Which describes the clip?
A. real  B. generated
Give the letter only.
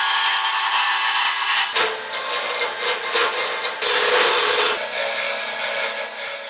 A